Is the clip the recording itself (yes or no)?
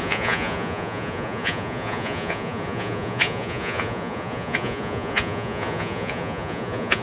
no